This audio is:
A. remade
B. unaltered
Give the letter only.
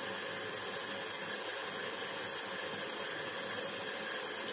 B